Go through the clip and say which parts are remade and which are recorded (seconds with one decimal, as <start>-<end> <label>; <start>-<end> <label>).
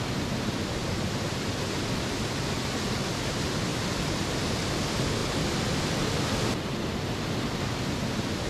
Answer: 0.0-0.8 recorded; 0.8-1.4 remade; 1.4-3.7 recorded; 3.7-4.3 remade; 4.3-8.5 recorded